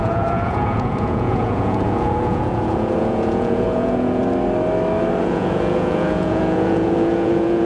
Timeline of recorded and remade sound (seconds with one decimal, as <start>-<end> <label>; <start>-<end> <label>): 0.0-4.2 remade; 4.2-5.2 recorded; 5.2-7.7 remade